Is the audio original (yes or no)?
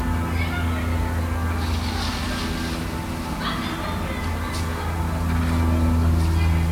yes